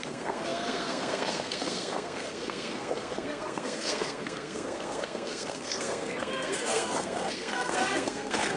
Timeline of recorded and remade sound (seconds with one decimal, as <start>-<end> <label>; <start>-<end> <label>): 0.0-8.6 remade